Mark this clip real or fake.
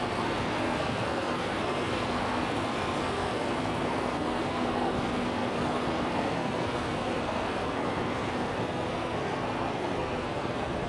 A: fake